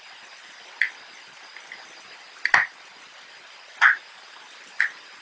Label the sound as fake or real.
real